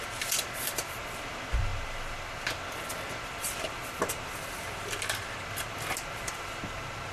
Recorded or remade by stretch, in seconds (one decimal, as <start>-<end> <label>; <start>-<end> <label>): 0.0-7.1 recorded